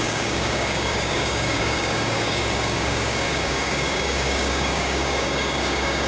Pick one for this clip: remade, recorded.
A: remade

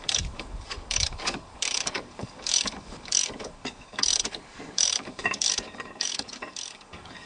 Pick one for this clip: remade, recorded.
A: remade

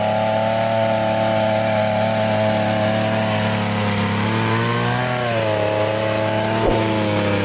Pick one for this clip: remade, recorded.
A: recorded